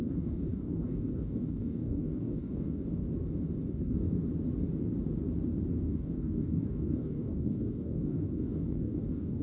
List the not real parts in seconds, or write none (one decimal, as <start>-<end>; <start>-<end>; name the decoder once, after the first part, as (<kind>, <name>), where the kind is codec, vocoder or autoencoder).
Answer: 0.0-3.0 (codec, DAC); 3.7-4.2; 5.7-9.4